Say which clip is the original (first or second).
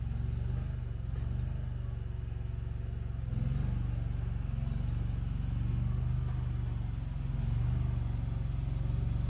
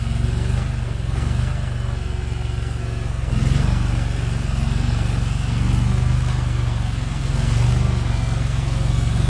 first